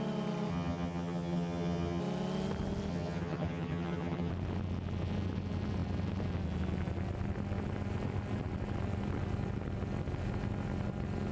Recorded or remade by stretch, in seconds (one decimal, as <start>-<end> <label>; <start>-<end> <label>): 0.0-0.5 recorded; 0.5-2.0 remade; 2.0-2.9 recorded; 2.9-4.3 remade; 4.3-11.3 recorded